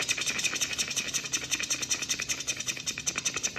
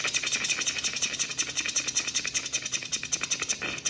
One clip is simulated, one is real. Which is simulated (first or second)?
first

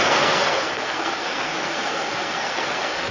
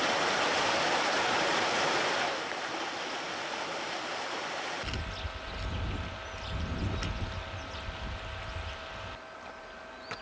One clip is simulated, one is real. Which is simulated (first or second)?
first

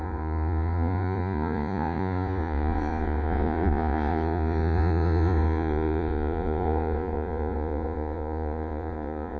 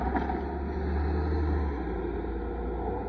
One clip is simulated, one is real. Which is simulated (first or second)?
first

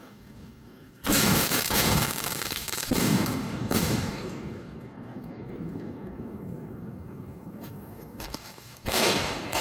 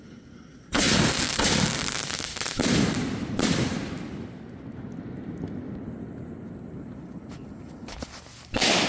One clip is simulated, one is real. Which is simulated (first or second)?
first